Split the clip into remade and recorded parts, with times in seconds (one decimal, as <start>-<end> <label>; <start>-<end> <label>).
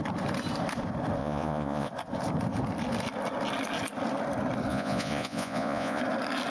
0.0-1.2 recorded; 1.2-1.9 remade; 1.9-4.7 recorded; 4.7-6.0 remade; 6.0-6.5 recorded